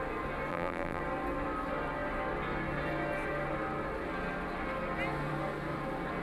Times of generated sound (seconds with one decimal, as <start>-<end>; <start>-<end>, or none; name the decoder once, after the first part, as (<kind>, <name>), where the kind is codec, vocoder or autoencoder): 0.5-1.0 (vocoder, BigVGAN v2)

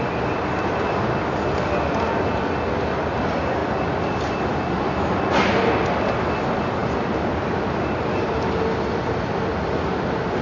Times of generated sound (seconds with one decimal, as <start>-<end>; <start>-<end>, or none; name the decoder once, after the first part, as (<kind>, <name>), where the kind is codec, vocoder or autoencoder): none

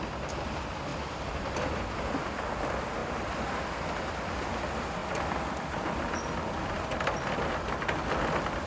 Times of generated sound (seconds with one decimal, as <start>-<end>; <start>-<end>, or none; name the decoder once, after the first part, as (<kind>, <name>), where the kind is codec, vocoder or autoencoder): 0.9-1.9 (vocoder, BigVGAN v2)

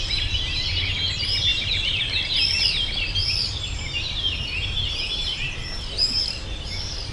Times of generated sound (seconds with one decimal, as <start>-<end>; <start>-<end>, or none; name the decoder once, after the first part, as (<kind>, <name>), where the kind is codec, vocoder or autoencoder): 1.5-4.3 (vocoder, BigVGAN v2); 5.2-6.2

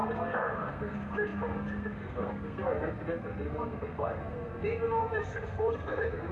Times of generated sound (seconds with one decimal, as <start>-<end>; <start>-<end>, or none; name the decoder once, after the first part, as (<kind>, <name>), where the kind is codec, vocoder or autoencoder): 0.0-6.3 (codec, SNAC)